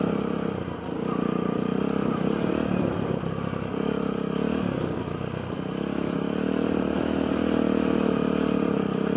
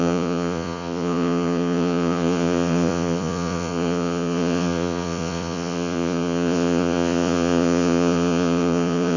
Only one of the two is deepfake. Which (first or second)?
second